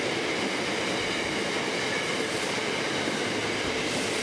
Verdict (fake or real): real